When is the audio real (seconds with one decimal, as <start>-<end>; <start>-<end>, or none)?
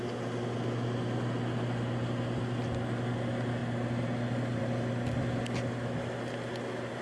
0.0-7.0